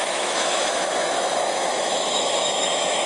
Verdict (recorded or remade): remade